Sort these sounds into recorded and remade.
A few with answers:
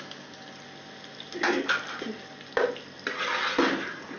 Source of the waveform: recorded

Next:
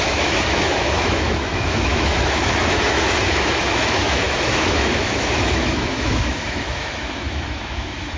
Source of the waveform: remade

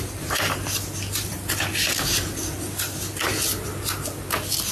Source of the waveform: recorded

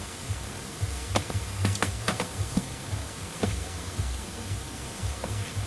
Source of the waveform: remade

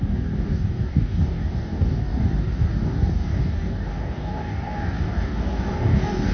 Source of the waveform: remade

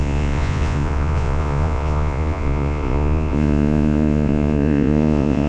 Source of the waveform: remade